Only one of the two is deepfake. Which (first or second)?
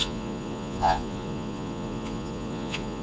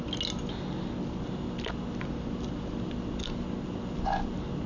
first